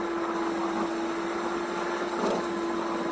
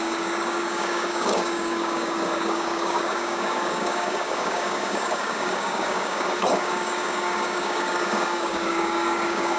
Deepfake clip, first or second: second